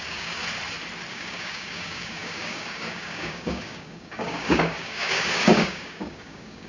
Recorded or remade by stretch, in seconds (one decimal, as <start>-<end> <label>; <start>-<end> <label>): 0.0-0.4 remade; 0.4-1.1 recorded; 1.1-6.7 remade